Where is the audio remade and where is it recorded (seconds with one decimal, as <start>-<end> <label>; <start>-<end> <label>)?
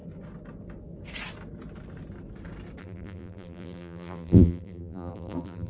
0.0-2.8 recorded; 2.8-5.7 remade